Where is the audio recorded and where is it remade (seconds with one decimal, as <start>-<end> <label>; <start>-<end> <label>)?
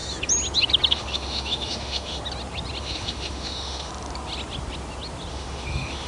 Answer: 0.0-0.9 recorded; 0.9-2.2 remade; 2.2-2.8 recorded; 2.8-3.9 remade; 3.9-5.3 recorded; 5.3-6.1 remade